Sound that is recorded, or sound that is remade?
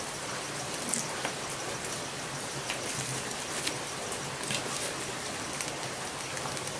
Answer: recorded